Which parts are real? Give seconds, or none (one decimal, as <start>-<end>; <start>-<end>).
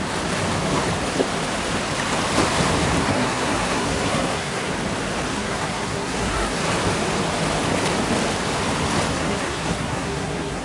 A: 0.0-3.0; 4.7-5.3; 6.6-9.1